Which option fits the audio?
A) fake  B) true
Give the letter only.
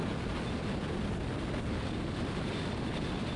B